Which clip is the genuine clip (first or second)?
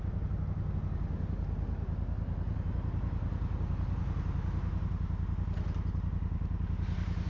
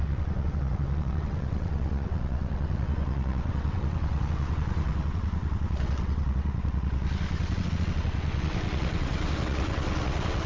first